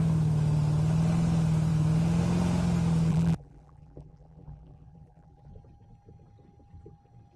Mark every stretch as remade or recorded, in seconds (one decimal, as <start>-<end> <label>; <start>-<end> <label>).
0.0-3.1 recorded; 3.1-5.5 remade; 5.5-7.4 recorded